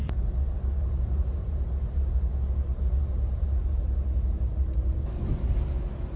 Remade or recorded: recorded